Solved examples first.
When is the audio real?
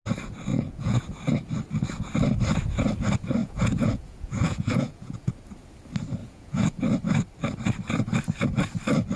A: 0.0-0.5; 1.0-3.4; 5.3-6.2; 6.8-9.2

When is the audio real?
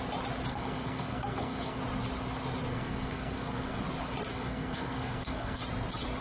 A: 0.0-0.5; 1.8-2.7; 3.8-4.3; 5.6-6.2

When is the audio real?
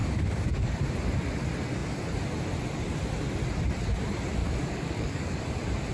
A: 0.8-4.4; 5.4-5.9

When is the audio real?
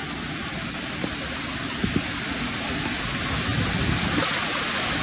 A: 0.0-5.0